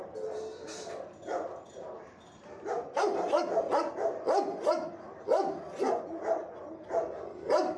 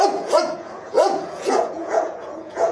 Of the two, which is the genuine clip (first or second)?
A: first